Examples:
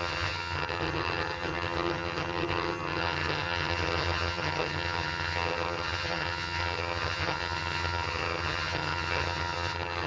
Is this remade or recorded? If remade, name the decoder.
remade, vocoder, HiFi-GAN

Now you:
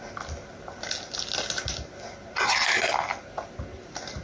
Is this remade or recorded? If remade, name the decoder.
recorded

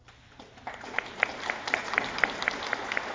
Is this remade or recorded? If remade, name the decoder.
recorded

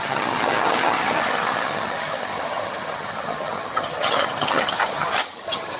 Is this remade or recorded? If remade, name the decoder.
remade, vocoder, HiFi-GAN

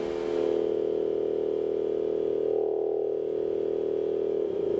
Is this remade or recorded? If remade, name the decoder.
recorded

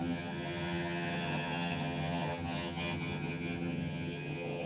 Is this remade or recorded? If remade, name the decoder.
remade, vocoder, HiFi-GAN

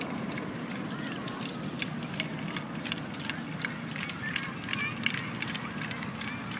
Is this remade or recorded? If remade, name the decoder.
recorded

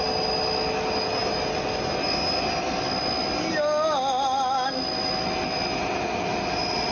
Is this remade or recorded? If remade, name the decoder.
recorded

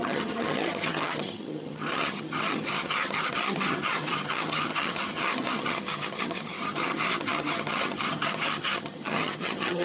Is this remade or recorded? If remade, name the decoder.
remade, vocoder, HiFi-GAN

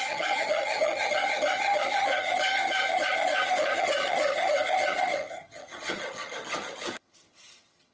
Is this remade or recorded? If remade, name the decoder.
remade, vocoder, HiFi-GAN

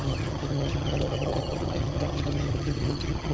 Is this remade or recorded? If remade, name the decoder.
remade, vocoder, HiFi-GAN